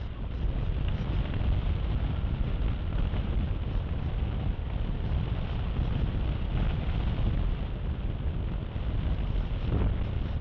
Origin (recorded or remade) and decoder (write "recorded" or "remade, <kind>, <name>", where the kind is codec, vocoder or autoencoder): recorded